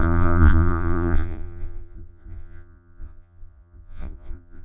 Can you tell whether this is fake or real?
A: fake